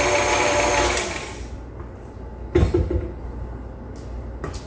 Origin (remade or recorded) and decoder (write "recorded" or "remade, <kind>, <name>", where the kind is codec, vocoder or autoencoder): recorded